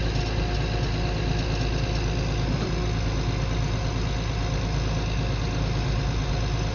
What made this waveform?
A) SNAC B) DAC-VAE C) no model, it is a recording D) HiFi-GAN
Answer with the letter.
C